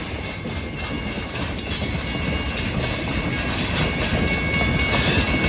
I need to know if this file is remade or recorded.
recorded